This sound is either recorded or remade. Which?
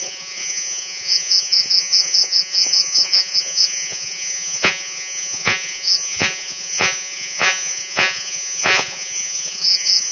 remade